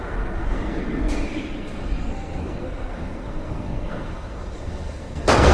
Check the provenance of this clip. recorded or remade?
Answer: remade